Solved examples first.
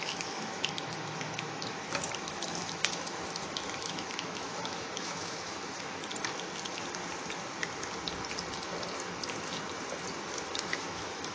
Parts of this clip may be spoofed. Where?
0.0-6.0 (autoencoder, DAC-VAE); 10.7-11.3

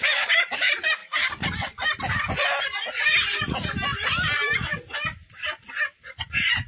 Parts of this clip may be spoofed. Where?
5.2-5.7 (vocoder, BigVGAN v2)

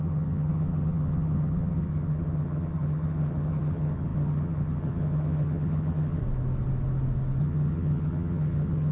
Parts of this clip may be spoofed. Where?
0.0-6.2 (vocoder, HiFi-GAN); 7.4-8.9

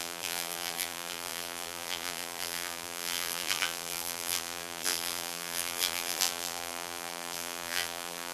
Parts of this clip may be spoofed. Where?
0.0-8.3 (vocoder, BigVGAN v2)

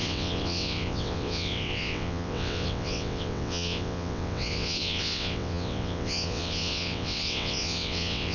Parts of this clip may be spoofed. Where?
0.0-8.3 (vocoder, WaveNeXt)